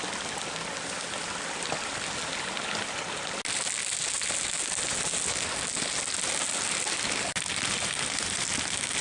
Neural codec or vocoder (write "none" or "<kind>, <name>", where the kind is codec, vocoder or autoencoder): none